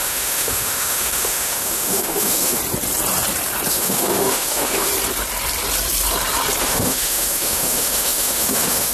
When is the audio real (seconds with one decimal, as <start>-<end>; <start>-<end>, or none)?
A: 2.6-3.7; 4.9-6.6